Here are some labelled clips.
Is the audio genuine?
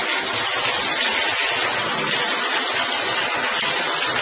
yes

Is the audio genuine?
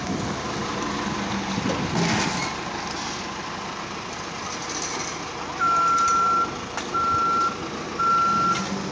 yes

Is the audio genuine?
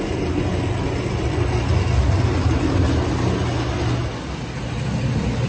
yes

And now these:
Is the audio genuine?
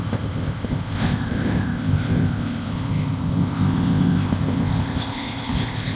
no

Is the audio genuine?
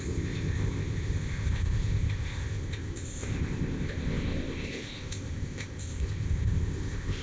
no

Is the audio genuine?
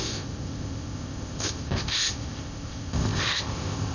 no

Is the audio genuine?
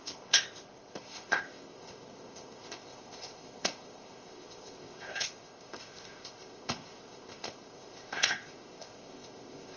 no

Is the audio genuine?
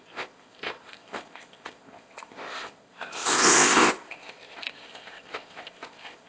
no